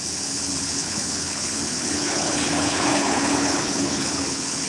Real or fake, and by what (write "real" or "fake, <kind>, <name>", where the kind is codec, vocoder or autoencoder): fake, codec, HILCodec